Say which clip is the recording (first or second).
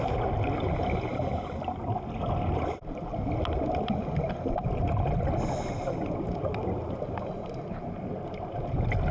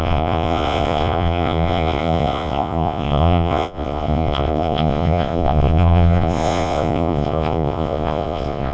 first